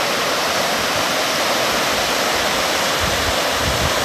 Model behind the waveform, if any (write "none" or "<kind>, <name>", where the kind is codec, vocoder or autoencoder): none